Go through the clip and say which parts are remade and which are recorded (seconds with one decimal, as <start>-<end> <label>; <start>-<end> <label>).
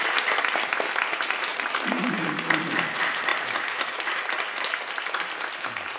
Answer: 0.0-1.5 recorded; 1.5-2.0 remade; 2.0-6.0 recorded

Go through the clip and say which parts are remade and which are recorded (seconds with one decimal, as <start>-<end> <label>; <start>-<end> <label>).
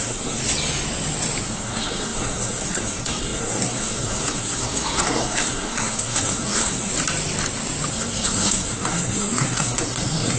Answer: 0.0-0.4 remade; 0.4-1.4 recorded; 1.4-6.9 remade; 6.9-7.9 recorded; 7.9-10.4 remade